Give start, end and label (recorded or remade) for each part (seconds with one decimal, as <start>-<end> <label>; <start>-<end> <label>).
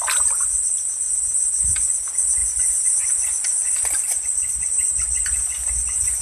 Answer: 0.0-2.4 recorded; 2.4-3.0 remade; 3.0-6.2 recorded